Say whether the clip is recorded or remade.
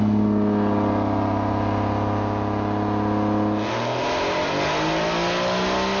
recorded